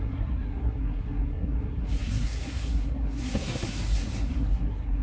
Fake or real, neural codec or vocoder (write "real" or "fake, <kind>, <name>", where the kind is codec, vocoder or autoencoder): fake, codec, SNAC